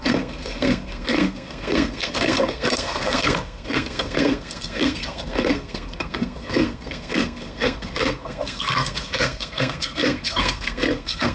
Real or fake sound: fake